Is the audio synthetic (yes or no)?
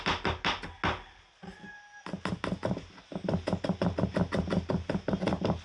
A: no